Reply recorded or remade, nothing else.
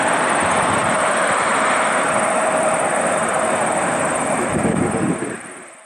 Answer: remade